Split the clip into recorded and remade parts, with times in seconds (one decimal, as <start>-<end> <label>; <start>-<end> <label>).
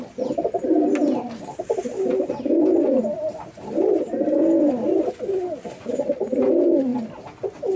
0.0-1.0 recorded; 1.0-2.5 remade; 2.5-3.3 recorded; 3.3-4.8 remade; 4.8-7.8 recorded